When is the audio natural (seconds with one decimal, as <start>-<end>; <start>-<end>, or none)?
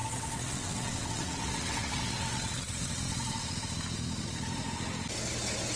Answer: 3.4-5.8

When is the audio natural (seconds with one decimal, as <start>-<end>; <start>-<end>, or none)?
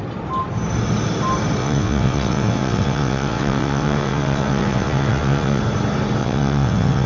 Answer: 0.0-1.6; 5.6-6.2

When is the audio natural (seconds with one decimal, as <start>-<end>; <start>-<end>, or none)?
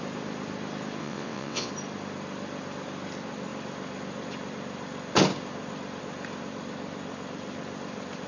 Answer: 0.0-1.0; 1.7-8.3